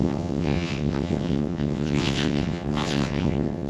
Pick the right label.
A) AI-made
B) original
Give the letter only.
A